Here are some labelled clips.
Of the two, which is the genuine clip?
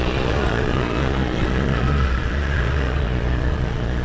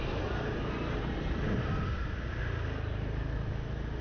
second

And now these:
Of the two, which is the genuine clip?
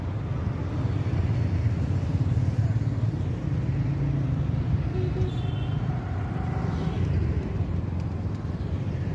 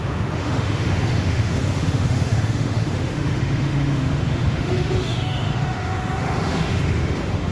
first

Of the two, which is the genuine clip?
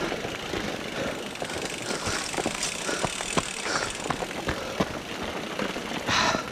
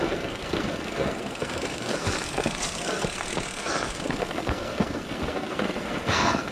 first